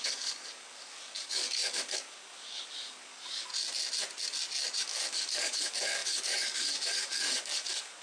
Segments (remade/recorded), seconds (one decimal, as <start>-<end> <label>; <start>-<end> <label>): 0.0-3.5 remade; 3.5-4.8 recorded; 4.8-8.0 remade